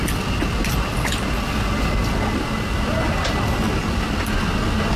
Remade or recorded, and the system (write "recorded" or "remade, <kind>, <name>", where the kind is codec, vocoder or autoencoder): recorded